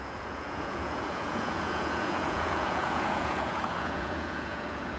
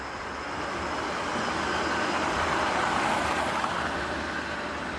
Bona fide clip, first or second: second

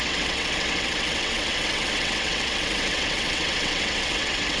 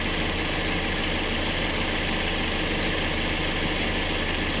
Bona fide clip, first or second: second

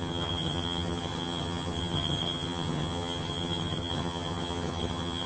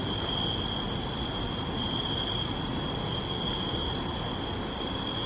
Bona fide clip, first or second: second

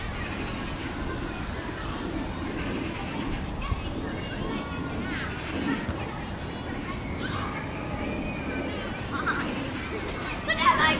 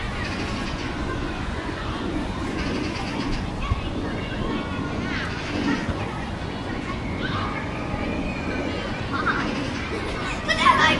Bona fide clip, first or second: first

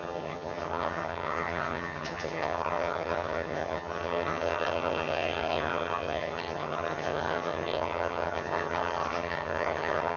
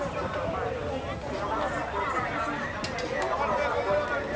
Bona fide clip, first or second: second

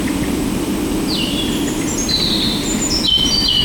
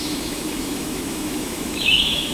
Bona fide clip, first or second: first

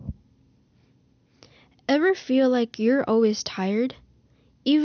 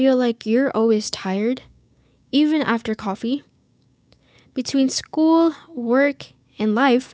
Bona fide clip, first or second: first